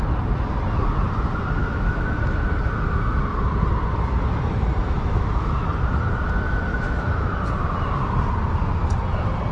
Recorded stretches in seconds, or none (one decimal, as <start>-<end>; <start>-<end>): 0.0-1.6; 2.2-4.8; 5.6-6.7; 7.4-9.5